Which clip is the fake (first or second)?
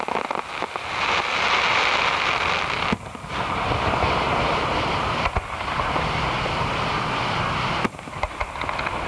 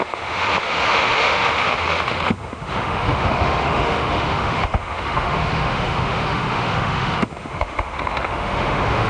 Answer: second